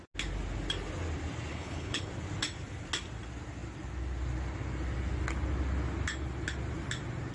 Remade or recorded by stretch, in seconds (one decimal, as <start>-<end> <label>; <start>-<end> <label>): 0.0-1.5 recorded; 1.5-2.1 remade; 2.1-7.3 recorded

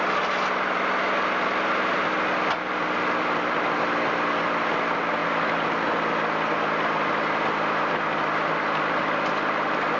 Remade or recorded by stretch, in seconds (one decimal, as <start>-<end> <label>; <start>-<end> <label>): 0.0-10.0 recorded

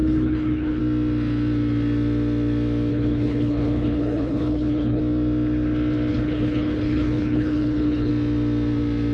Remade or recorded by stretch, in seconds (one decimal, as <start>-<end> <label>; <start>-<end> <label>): 0.0-0.8 remade; 0.8-2.9 recorded; 2.9-5.0 remade; 5.0-6.1 recorded; 6.1-8.1 remade; 8.1-9.1 recorded

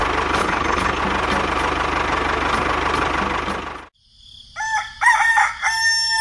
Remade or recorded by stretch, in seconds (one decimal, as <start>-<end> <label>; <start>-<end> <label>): 0.0-0.4 recorded; 0.4-1.0 remade; 1.0-6.2 recorded

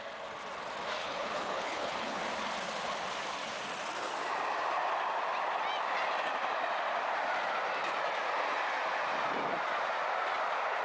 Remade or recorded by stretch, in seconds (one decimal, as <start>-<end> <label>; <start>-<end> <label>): 0.0-1.0 recorded; 1.0-2.2 remade; 2.2-10.8 recorded

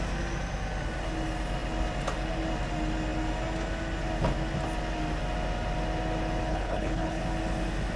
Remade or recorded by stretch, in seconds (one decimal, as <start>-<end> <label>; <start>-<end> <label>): 0.0-6.5 recorded; 6.5-7.2 remade; 7.2-8.0 recorded

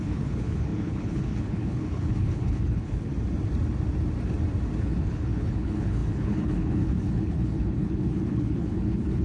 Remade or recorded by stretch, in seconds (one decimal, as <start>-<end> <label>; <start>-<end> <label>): 0.0-3.1 remade; 3.1-4.8 recorded; 4.8-9.2 remade

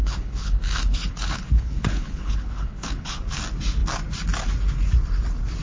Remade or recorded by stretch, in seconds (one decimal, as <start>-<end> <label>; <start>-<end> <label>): 0.0-3.4 remade; 3.4-5.6 recorded